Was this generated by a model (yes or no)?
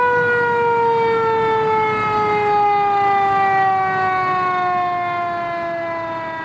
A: no